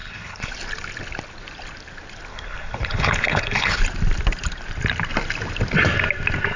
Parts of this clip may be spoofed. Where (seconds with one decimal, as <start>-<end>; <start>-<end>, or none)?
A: 0.0-0.5; 2.3-3.8